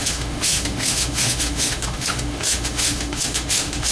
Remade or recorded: remade